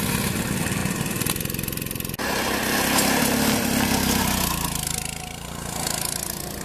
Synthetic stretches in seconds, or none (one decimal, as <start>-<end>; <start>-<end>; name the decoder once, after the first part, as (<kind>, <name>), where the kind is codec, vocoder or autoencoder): none